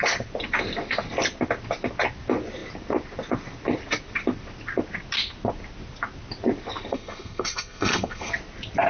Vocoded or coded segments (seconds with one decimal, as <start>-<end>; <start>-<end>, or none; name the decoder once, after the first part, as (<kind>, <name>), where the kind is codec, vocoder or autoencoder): 6.9-8.3 (codec, SNAC)